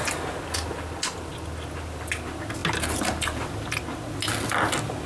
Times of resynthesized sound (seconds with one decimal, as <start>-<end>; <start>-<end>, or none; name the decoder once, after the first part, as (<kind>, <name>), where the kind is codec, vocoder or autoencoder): none